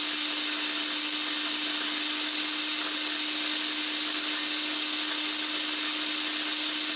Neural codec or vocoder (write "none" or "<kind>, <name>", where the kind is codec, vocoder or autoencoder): none